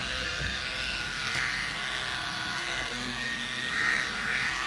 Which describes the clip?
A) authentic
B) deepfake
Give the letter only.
B